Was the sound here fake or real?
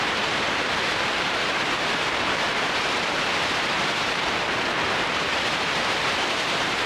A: fake